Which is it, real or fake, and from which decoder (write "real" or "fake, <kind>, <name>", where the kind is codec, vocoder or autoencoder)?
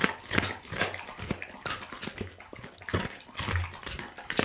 real